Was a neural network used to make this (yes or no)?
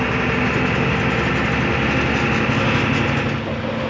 no